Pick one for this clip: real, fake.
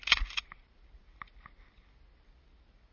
real